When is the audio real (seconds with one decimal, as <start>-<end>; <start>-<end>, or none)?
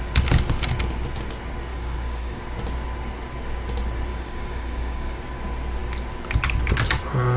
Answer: 0.0-1.7; 2.4-4.1; 5.2-7.4